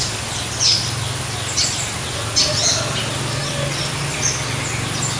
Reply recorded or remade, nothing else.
recorded